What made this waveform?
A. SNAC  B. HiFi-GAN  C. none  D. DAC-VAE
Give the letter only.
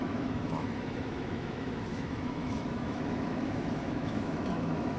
D